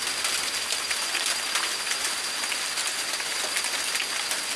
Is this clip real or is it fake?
real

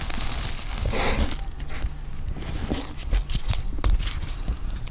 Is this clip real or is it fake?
real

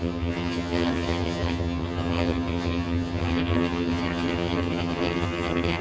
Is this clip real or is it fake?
fake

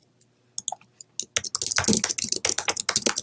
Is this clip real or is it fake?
real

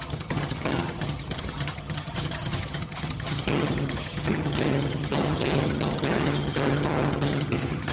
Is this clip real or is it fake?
fake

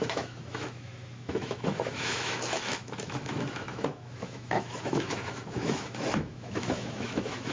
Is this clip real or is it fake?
fake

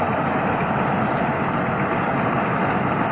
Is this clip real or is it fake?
real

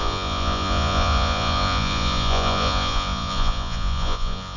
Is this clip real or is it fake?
fake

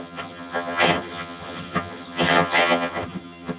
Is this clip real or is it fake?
fake